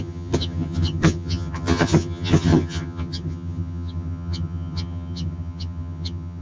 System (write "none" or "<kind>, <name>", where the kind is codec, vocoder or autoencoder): vocoder, HiFi-GAN